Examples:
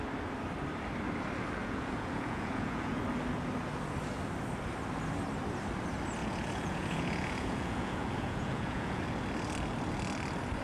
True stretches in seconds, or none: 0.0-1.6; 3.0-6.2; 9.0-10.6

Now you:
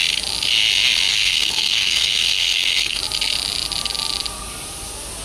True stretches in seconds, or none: 0.0-1.1; 3.0-5.2